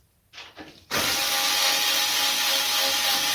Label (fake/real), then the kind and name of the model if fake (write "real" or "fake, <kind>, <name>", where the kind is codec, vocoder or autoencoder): real